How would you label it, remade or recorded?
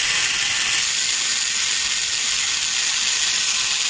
recorded